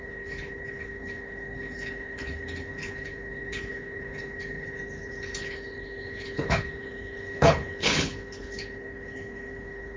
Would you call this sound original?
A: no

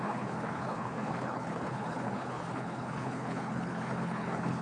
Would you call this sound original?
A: no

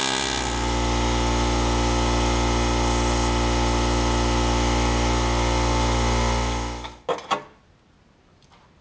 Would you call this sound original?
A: yes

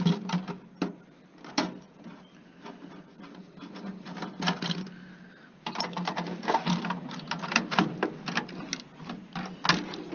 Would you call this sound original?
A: yes